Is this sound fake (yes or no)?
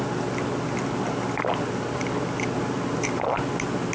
no